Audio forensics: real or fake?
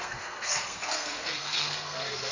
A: fake